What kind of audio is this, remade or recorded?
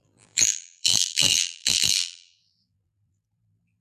remade